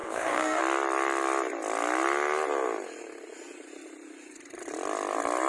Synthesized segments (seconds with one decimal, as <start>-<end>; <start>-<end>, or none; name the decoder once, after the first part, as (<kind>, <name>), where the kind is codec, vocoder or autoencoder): 0.0-0.6 (codec, DAC)